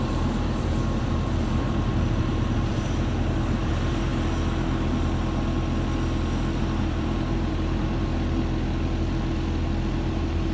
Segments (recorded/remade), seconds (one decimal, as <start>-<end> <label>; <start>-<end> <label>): 0.0-4.1 remade; 4.1-6.8 recorded; 6.8-8.1 remade; 8.1-10.1 recorded; 10.1-10.5 remade